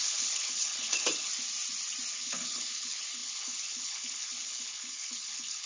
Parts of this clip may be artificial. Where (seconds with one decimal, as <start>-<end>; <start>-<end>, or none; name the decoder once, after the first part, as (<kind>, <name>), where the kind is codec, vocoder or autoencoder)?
0.0-1.3 (codec, HILCodec); 2.1-5.7